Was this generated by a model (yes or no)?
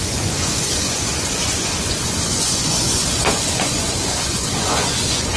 yes